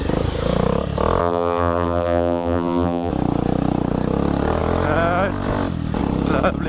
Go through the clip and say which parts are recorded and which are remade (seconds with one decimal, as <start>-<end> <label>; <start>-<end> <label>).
0.0-1.2 recorded; 1.2-3.1 remade; 3.1-6.7 recorded